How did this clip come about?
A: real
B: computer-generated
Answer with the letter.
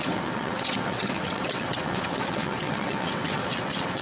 B